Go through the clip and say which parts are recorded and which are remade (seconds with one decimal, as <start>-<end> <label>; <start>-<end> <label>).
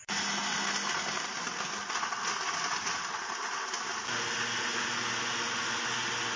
0.0-6.4 recorded